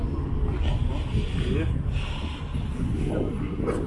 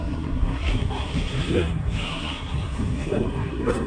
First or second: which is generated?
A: second